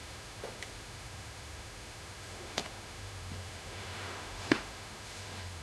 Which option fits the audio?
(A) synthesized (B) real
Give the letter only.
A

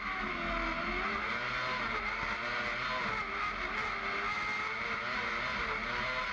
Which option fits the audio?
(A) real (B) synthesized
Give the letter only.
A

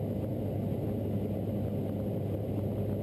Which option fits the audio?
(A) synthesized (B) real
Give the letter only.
B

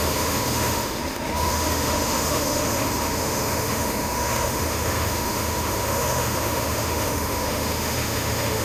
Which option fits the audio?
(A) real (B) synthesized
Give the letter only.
B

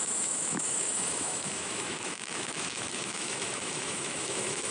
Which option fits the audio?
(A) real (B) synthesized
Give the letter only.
B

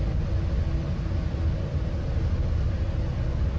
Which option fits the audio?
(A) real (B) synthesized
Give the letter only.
A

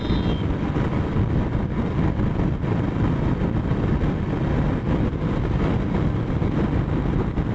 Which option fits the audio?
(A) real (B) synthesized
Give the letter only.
A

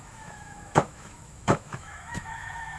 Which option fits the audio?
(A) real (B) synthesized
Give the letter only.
B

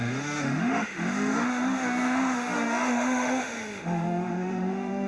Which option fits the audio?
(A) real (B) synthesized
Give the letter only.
B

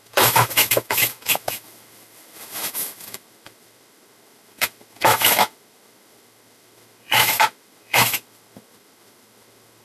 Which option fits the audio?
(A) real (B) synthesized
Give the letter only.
B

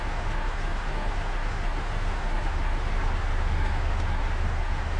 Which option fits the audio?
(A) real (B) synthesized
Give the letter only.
B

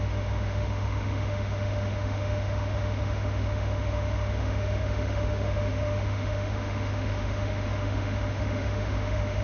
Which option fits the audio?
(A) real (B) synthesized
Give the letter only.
B